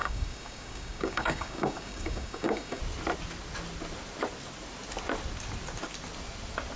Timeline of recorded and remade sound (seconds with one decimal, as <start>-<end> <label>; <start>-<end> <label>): 0.0-2.8 remade; 2.8-6.8 recorded